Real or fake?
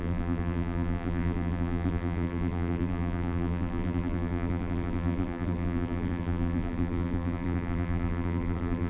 fake